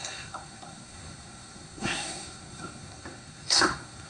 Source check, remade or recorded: remade